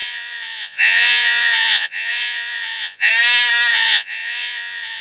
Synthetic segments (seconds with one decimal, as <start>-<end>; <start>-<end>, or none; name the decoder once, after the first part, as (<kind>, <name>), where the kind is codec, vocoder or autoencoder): 0.0-3.1 (vocoder, Vocos); 3.7-5.0